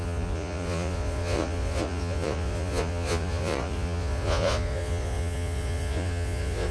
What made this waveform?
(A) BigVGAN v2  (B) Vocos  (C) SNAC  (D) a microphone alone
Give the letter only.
B